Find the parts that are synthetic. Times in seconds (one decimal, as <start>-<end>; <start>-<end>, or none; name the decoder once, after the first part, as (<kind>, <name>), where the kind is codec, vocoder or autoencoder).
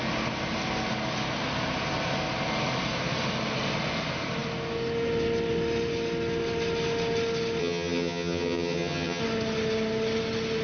7.6-9.2 (vocoder, HiFi-GAN)